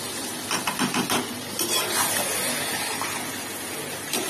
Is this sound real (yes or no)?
yes